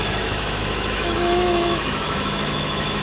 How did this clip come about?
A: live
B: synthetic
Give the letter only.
B